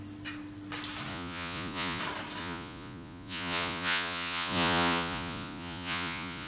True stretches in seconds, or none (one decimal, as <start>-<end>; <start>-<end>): 0.0-1.1; 2.0-2.4